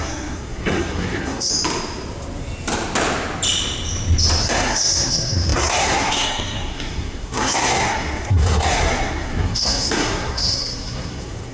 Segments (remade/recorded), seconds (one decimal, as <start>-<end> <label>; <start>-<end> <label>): 0.0-1.5 remade; 1.5-4.4 recorded; 4.4-11.5 remade